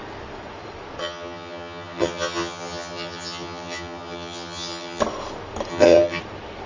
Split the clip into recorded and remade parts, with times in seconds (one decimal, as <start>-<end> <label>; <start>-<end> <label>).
0.0-1.0 recorded; 1.0-5.0 remade; 5.0-5.7 recorded; 5.7-6.2 remade; 6.2-6.7 recorded